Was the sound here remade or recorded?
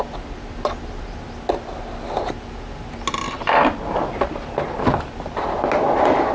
recorded